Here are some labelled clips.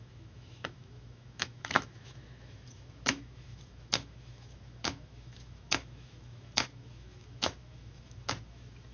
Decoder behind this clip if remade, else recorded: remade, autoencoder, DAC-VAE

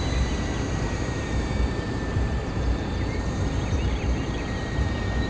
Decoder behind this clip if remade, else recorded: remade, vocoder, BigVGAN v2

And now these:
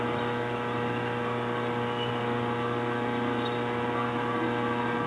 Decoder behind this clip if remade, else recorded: recorded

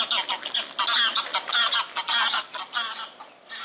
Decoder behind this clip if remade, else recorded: recorded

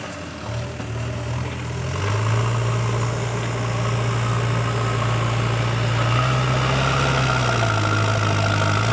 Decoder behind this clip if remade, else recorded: recorded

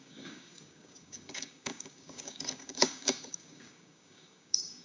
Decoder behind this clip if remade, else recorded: remade, codec, DAC